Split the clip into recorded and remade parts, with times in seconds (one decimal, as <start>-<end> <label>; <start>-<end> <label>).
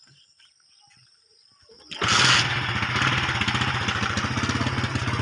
0.0-5.2 recorded